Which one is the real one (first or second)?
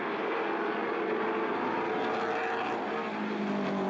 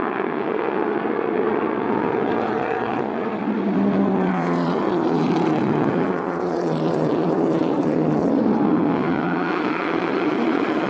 first